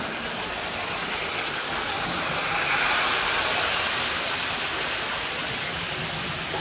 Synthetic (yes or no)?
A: no